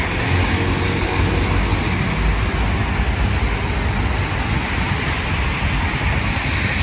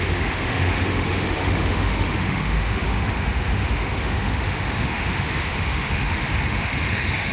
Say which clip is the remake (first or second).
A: second